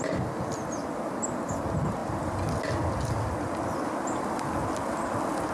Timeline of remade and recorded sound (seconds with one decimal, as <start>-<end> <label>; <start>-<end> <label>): 0.0-5.5 recorded